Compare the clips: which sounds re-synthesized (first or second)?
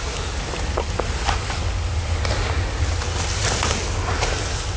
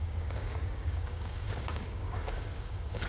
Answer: second